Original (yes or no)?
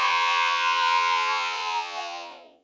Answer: no